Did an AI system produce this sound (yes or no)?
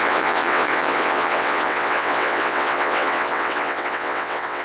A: yes